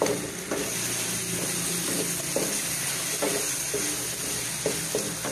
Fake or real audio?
real